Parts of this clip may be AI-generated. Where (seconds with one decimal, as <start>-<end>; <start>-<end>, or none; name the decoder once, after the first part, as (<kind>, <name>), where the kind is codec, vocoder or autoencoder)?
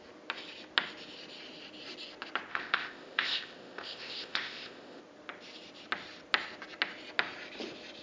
2.5-5.0 (codec, ZipCodec)